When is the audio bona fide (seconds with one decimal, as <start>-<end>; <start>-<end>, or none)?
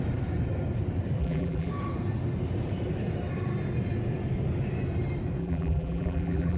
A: 0.0-1.2; 1.7-5.4